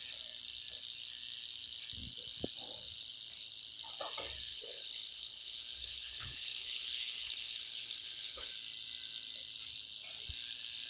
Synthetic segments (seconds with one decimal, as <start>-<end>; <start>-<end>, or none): 4.5-8.5